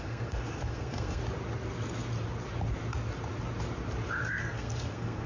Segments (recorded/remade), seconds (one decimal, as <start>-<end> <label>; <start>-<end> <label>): 0.0-1.2 remade; 1.2-4.4 recorded; 4.4-5.3 remade